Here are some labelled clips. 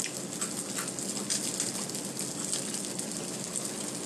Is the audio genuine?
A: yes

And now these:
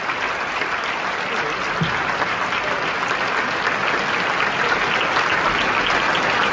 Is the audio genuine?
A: yes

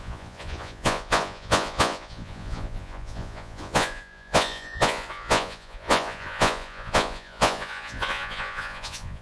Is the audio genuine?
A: no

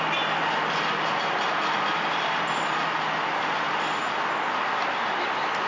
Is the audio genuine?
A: yes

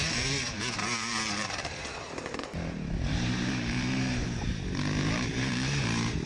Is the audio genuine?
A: no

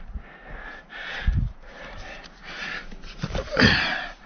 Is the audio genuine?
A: no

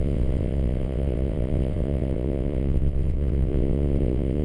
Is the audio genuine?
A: no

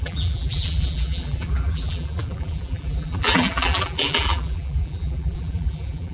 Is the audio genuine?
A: no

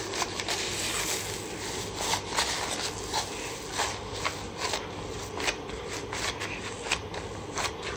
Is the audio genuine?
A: yes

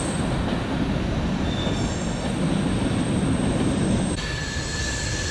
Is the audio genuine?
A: yes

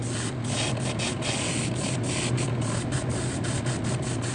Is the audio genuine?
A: yes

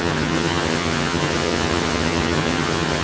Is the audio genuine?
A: no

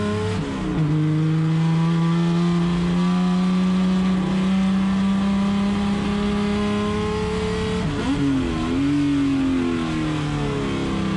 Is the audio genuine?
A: yes